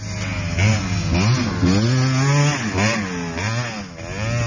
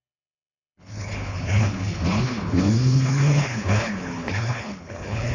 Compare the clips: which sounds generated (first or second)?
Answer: second